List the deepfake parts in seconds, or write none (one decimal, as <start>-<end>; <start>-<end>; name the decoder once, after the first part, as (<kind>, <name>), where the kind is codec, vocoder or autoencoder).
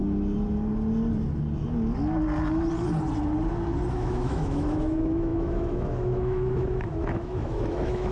3.9-8.1 (autoencoder, DAC-VAE)